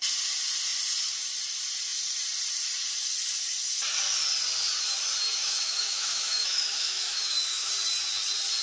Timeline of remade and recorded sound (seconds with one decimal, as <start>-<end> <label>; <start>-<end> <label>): 0.0-5.4 recorded; 5.4-7.7 remade; 7.7-8.6 recorded